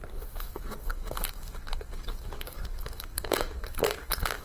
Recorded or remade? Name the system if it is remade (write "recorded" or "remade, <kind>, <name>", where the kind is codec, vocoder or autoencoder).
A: remade, codec, DAC